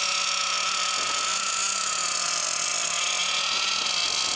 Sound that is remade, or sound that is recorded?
recorded